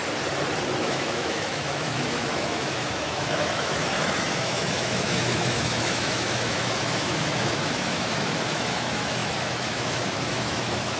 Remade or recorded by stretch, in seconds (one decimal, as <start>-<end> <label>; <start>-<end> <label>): 0.0-0.8 recorded; 0.8-11.0 remade